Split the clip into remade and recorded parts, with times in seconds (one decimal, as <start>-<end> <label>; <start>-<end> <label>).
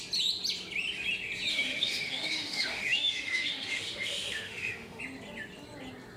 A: 0.0-1.5 recorded; 1.5-5.0 remade; 5.0-6.2 recorded